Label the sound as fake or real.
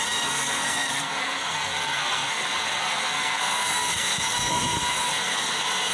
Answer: fake